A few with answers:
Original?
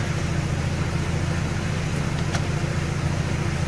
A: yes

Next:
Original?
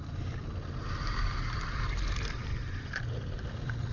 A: no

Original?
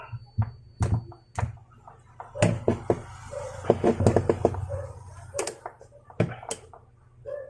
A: yes